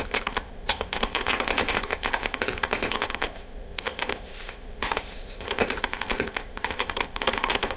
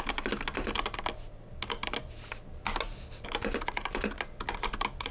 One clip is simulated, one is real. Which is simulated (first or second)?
first